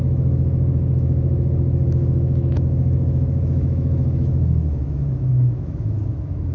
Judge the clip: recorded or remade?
remade